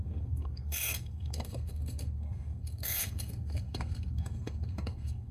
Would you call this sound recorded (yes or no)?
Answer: no